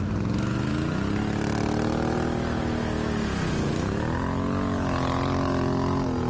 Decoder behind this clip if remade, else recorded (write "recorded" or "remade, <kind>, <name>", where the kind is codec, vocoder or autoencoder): recorded